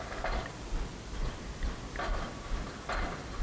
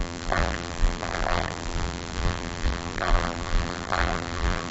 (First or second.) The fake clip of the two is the second